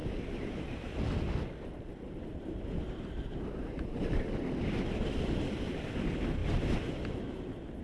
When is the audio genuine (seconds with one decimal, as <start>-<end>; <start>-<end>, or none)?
1.0-2.3; 4.4-6.4; 7.0-7.8